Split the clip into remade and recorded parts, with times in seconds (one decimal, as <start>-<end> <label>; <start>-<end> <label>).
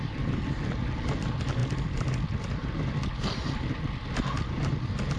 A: 0.0-5.2 recorded